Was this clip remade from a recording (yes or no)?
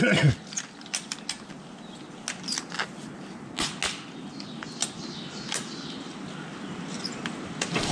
no